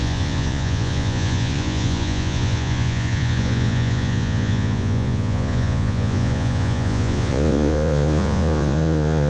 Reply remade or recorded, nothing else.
remade